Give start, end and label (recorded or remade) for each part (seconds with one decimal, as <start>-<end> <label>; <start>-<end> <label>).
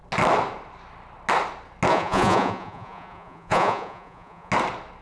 0.0-1.9 recorded; 1.9-4.5 remade; 4.5-5.0 recorded